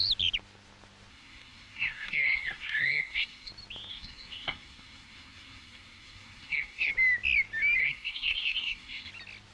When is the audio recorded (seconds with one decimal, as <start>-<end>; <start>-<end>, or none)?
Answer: 0.0-1.1; 3.5-3.9; 6.9-7.8; 9.1-9.5